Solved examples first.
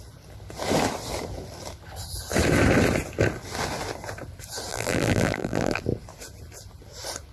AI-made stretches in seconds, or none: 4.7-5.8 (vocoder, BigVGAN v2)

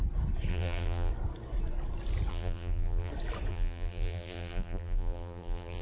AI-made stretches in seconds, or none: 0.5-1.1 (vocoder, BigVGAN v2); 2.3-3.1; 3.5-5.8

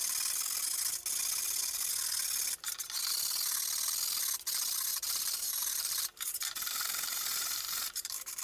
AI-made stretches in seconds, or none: 4.9-8.4 (vocoder, BigVGAN v2)

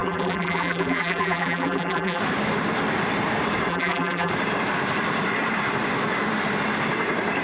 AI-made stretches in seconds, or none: 0.0-2.2 (vocoder, BigVGAN v2); 3.7-4.3

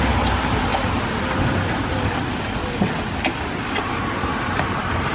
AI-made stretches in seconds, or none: 0.0-0.7 (vocoder, BigVGAN v2); 3.8-5.1

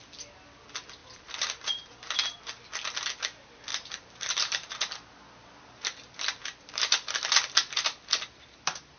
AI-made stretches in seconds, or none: 1.0-2.4 (vocoder, BigVGAN v2); 3.7-6.8

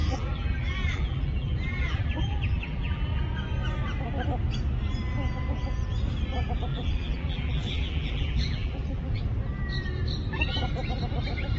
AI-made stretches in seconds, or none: 0.0-3.2 (vocoder, BigVGAN v2); 6.7-9.2